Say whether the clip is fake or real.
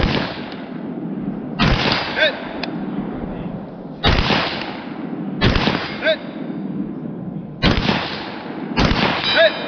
real